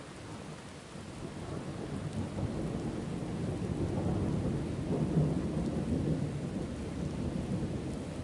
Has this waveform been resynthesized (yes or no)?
no